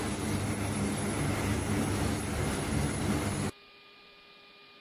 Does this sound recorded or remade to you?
recorded